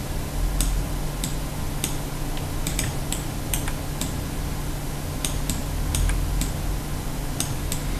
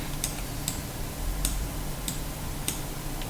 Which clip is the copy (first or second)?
second